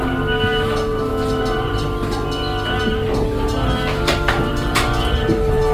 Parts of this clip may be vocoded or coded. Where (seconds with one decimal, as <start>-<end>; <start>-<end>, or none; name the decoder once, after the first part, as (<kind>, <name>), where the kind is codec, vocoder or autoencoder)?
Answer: 0.0-1.1 (vocoder, BigVGAN v2); 4.5-5.7